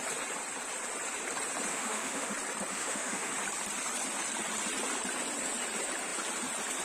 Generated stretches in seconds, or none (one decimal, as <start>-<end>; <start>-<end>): 1.7-2.3; 2.7-3.3